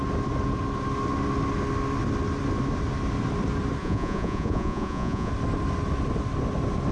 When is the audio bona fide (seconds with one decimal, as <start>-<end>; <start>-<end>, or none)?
0.0-3.8; 5.3-6.9